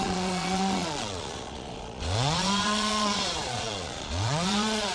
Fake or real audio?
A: fake